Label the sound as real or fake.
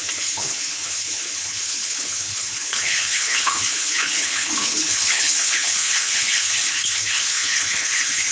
fake